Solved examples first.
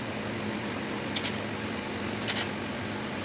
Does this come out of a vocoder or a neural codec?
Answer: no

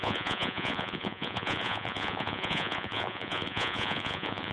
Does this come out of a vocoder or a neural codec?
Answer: yes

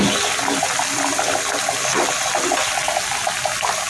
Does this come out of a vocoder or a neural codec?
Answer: no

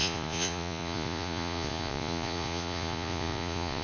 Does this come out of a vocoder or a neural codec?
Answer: yes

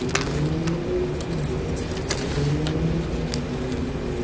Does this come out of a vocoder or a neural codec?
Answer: no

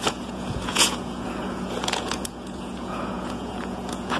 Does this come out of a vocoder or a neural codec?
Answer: yes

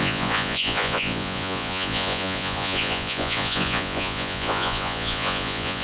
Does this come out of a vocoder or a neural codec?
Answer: yes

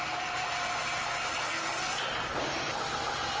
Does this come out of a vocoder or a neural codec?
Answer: no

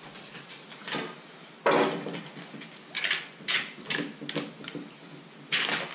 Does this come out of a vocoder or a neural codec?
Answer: no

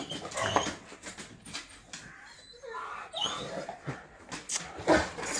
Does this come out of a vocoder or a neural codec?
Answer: no